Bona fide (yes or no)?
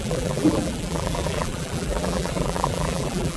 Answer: no